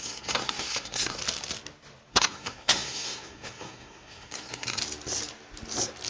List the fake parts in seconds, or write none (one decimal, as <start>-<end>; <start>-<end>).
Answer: 0.0-1.2; 2.1-4.8